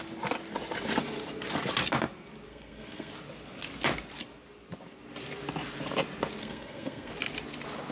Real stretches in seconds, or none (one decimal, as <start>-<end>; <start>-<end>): 0.0-2.5; 3.1-6.4; 7.1-7.9